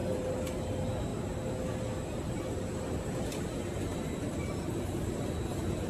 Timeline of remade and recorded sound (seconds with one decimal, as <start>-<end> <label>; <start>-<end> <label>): 0.0-0.6 remade; 0.6-5.9 recorded